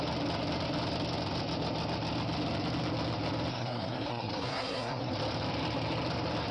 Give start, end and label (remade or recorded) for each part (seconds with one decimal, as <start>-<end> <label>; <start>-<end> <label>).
0.0-3.5 recorded; 3.5-5.1 remade; 5.1-6.5 recorded